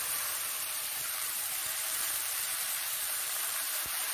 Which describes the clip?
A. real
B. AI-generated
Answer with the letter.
B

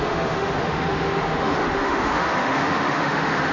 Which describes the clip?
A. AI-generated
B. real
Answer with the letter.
A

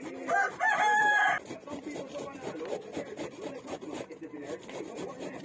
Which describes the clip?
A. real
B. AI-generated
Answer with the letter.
A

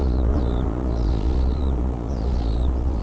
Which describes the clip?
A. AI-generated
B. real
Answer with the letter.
A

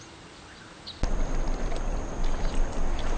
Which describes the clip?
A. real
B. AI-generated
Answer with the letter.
A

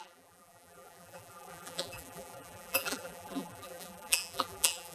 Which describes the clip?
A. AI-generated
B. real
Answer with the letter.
A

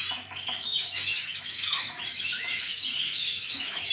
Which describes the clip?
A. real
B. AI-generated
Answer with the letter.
B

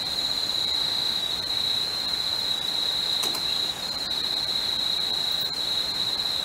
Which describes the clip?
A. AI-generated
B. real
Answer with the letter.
B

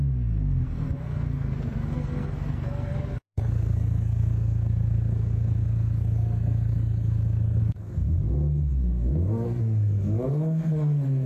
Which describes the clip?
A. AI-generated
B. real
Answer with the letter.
A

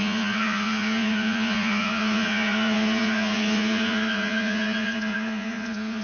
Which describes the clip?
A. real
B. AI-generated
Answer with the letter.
B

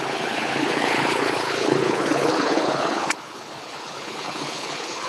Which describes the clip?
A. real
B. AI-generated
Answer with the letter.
B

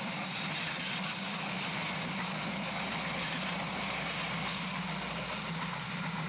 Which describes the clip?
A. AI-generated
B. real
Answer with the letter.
B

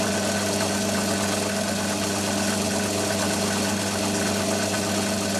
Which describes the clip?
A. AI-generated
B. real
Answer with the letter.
B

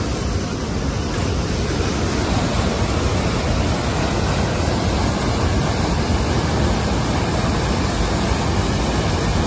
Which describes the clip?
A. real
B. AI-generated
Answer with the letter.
A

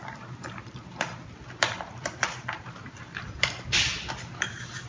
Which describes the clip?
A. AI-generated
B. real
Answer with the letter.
A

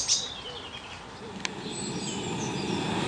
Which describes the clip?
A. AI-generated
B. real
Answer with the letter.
B